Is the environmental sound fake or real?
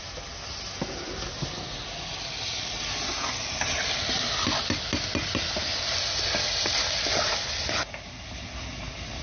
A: real